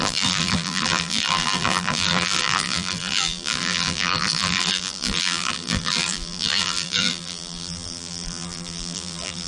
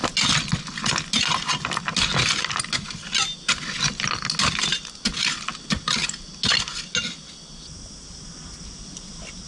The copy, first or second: first